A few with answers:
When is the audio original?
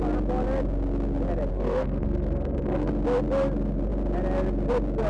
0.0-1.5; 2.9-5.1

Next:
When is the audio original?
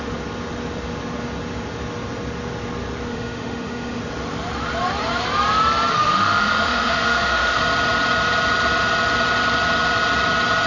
0.0-3.1; 4.0-5.9; 7.6-10.7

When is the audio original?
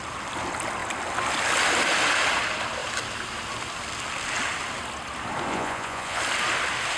0.0-5.5; 6.2-7.0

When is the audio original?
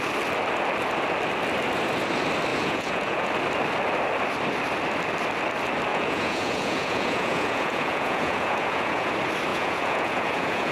0.0-2.5; 3.3-5.9; 9.1-9.5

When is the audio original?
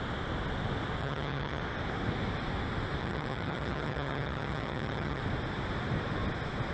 0.0-1.0; 1.6-3.0; 5.2-6.7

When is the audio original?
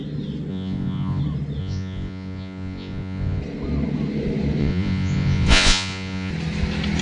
0.0-0.5; 1.2-1.6; 3.4-4.6; 6.3-7.0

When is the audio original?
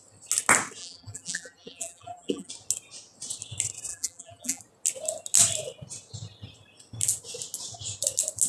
0.0-0.8; 2.5-3.9; 4.6-8.5